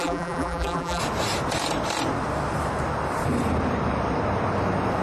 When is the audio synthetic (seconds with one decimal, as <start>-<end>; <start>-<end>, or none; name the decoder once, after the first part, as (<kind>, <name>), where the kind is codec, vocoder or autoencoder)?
0.0-1.0 (vocoder, BigVGAN v2)